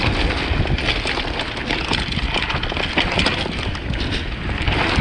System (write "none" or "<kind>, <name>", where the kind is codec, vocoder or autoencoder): none